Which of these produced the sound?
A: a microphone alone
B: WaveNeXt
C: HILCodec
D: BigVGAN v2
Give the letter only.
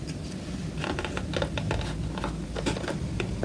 A